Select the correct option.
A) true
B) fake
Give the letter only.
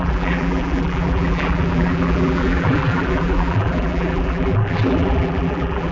B